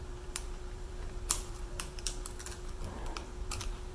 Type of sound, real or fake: fake